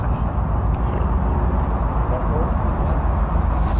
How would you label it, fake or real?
real